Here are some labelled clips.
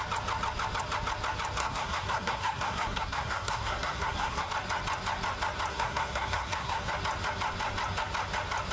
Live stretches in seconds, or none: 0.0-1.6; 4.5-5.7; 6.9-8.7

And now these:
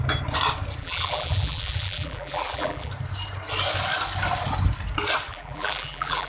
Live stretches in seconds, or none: 0.0-0.8; 2.9-5.3